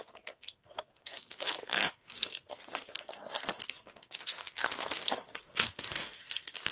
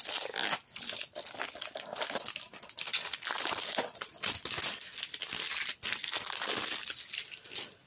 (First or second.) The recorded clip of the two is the second